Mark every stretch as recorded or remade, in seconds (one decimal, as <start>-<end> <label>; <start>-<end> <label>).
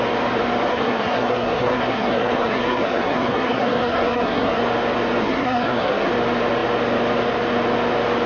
0.0-0.7 recorded; 0.7-4.6 remade; 4.6-5.2 recorded; 5.2-6.1 remade; 6.1-8.3 recorded